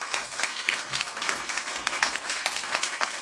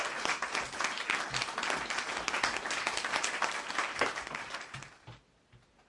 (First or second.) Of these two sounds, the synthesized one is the first